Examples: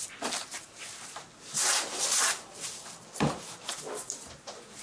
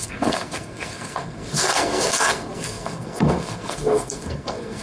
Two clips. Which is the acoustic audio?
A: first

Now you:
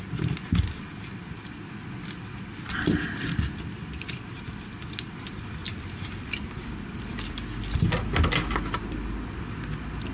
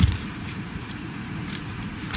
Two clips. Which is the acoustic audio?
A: first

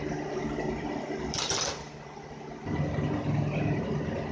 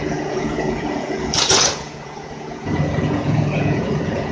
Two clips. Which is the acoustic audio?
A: first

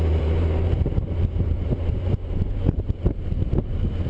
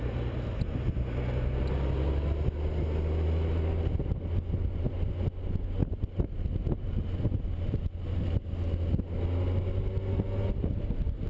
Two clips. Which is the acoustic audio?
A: second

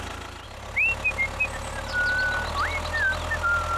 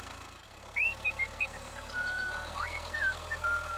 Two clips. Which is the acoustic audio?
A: first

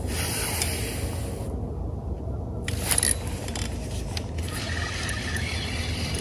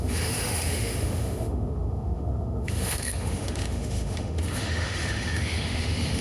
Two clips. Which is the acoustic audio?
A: first